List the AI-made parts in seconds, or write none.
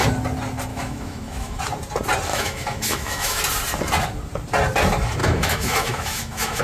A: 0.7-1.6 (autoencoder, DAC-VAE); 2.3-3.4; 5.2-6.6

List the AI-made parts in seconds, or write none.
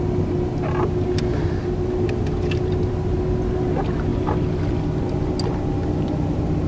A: none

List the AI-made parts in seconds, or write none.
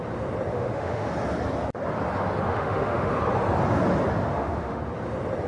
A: 0.5-1.1 (autoencoder, DAC-VAE); 2.5-3.1; 4.3-4.8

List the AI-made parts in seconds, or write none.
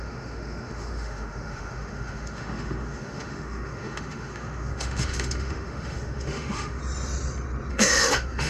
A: 0.0-6.8 (autoencoder, DAC-VAE); 7.7-8.5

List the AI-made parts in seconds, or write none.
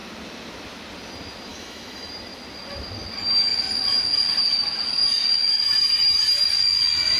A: 1.5-2.1 (autoencoder, DAC-VAE)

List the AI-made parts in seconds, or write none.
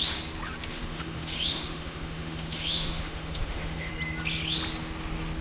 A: 0.7-3.9 (autoencoder, DAC-VAE)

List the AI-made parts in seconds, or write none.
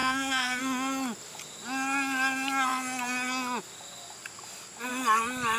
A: 0.0-0.6 (autoencoder, DAC-VAE)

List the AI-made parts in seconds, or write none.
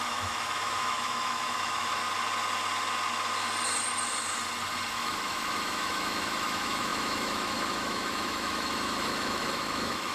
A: 0.0-2.0 (autoencoder, DAC-VAE); 4.9-10.1